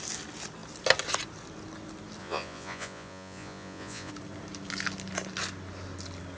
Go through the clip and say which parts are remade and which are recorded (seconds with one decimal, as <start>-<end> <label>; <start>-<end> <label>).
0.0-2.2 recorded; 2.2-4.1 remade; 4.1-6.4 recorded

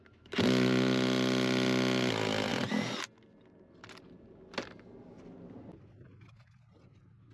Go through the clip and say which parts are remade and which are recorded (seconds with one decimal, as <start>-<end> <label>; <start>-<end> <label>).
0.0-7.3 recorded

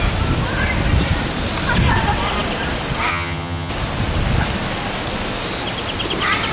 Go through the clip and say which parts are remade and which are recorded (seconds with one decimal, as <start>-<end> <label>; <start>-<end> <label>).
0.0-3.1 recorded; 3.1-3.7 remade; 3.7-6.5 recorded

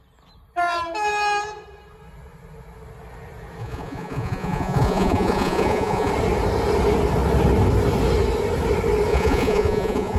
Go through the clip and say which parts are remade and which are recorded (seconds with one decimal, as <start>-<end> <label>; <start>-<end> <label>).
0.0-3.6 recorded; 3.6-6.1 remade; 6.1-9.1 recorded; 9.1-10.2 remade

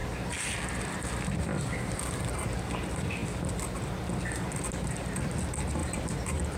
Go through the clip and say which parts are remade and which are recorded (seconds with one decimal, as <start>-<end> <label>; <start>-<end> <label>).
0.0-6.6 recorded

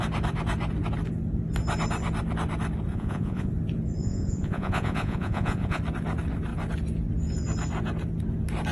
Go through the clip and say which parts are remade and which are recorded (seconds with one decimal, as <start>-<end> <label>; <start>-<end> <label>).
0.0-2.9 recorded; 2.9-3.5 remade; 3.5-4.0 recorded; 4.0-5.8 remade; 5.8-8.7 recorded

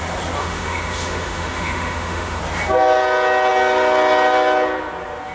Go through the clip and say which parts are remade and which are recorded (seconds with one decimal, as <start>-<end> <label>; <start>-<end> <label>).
0.0-0.4 recorded; 0.4-2.4 remade; 2.4-5.3 recorded

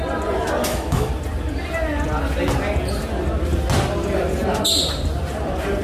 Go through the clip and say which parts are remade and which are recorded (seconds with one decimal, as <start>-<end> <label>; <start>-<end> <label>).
0.0-0.6 recorded; 0.6-1.1 remade; 1.1-5.8 recorded